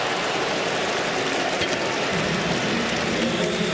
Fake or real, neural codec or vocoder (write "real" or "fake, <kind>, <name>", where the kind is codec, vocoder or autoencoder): real